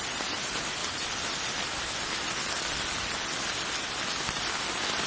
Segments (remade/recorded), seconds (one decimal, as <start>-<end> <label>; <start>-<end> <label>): 0.0-5.1 recorded